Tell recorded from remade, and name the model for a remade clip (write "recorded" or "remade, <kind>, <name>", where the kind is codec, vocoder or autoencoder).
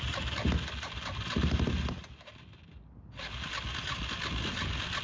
recorded